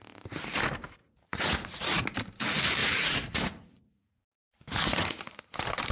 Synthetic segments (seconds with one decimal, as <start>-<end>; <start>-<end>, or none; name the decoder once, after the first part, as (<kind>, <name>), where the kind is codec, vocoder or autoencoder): 1.0-2.0 (vocoder, Vocos); 2.8-5.4